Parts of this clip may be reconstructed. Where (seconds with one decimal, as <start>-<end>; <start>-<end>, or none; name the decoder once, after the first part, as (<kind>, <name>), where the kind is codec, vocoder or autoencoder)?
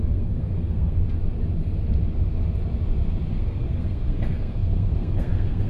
0.0-1.0 (codec, SNAC); 3.3-5.7